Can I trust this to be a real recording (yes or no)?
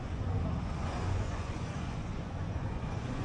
no